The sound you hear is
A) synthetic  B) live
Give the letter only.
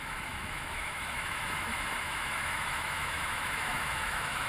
A